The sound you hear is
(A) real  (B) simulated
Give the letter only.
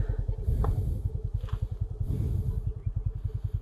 A